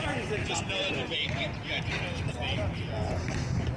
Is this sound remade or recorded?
recorded